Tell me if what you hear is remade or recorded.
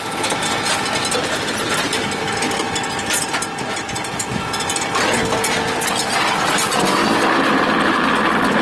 recorded